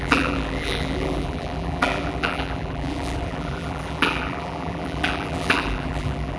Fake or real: fake